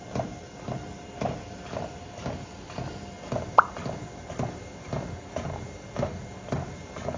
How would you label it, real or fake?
real